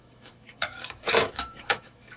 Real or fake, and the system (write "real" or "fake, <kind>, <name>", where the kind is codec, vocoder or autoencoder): fake, autoencoder, DAC-VAE